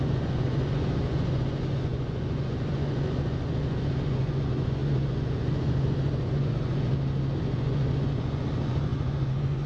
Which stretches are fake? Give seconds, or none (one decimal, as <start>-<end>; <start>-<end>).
0.0-6.9; 7.4-9.7